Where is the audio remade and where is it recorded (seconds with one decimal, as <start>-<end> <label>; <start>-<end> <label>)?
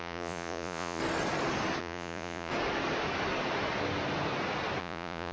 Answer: 0.0-1.0 remade; 1.0-1.8 recorded; 1.8-2.5 remade; 2.5-4.8 recorded; 4.8-5.3 remade